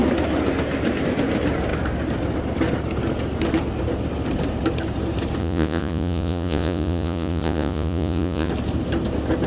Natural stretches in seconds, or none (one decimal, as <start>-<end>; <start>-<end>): 0.0-5.4; 8.5-9.5